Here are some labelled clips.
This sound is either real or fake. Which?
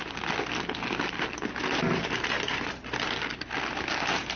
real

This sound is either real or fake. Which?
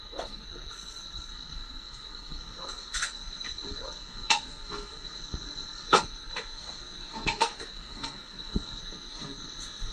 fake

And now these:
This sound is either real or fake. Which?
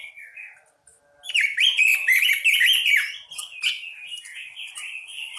real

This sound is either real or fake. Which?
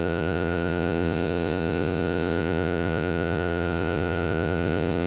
fake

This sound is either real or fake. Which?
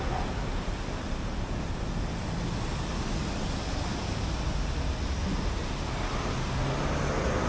real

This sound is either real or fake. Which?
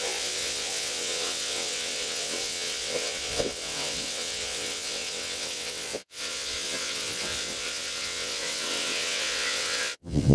fake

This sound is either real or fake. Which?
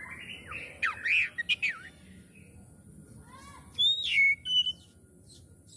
real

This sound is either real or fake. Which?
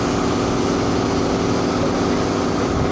real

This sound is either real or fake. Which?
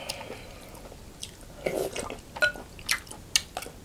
real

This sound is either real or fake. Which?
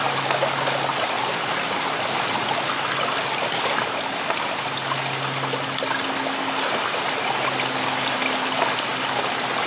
real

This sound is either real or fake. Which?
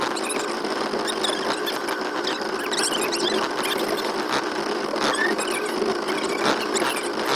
real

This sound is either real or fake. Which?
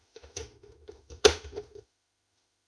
fake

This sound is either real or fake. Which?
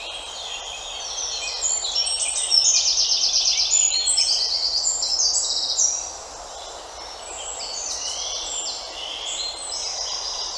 real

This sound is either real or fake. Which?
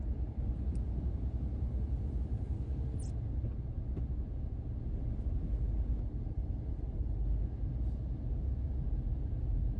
real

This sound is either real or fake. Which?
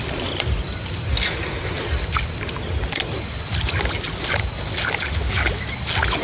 real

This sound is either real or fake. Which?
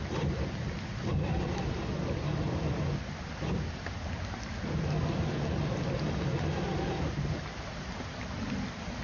real